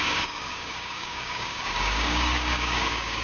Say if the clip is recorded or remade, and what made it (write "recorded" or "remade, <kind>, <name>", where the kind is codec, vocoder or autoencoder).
remade, codec, DAC